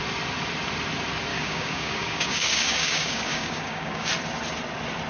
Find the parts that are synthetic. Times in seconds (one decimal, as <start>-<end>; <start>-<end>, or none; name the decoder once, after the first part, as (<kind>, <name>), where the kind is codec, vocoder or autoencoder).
1.3-4.1 (codec, DAC)